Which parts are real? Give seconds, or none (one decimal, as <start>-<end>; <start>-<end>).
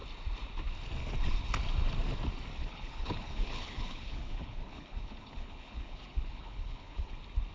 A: 0.0-2.6; 7.1-7.5